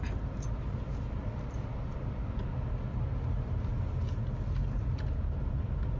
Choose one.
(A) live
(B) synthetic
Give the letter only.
A